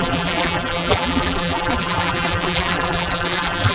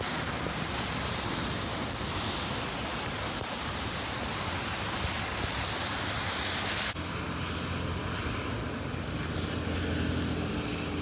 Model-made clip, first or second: first